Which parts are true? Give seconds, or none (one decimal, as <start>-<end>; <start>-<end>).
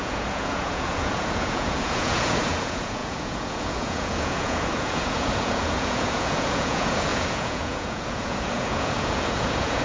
none